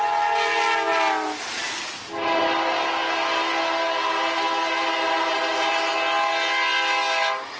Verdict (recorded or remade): recorded